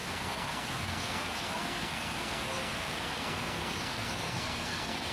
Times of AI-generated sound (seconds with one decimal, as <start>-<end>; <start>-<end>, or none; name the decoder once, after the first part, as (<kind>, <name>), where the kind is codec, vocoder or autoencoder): 0.0-5.1 (codec, SNAC)